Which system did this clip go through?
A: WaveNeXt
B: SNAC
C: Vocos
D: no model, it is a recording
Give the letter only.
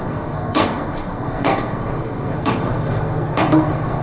B